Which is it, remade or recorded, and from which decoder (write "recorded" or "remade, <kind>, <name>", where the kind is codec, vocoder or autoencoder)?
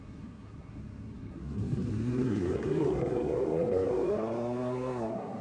remade, codec, SNAC